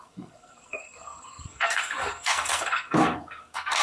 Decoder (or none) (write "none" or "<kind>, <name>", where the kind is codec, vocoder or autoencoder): codec, SNAC